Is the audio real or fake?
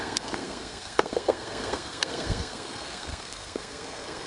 fake